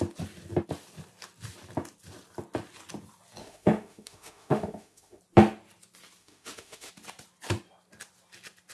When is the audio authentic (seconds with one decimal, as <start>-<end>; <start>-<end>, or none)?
0.0-3.4; 5.2-6.2; 6.9-8.7